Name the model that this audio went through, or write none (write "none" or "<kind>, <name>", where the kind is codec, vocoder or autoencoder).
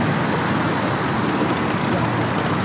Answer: none